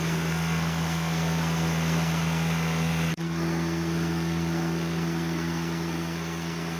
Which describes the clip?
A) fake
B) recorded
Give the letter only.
A